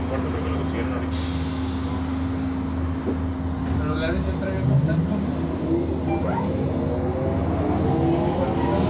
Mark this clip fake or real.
real